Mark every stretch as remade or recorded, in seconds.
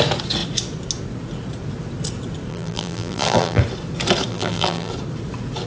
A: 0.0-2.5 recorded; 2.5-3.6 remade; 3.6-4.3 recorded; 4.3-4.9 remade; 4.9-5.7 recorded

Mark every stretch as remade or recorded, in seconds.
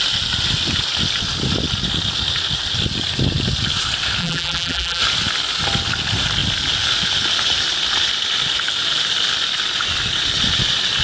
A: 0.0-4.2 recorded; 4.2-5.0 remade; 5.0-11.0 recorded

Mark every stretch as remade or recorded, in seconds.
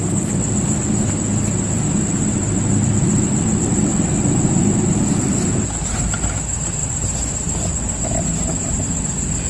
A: 0.0-9.5 recorded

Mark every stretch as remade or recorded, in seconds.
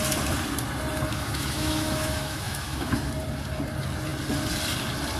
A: 0.0-1.1 recorded; 1.1-3.1 remade; 3.1-5.2 recorded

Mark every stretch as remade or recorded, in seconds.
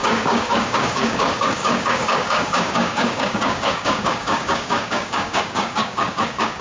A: 0.0-6.6 remade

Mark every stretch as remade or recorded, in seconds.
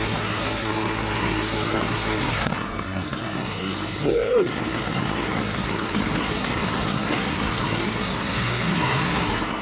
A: 0.0-9.6 remade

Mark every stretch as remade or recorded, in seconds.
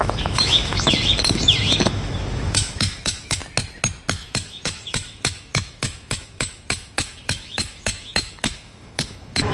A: 0.0-3.4 remade; 3.4-4.1 recorded; 4.1-9.5 remade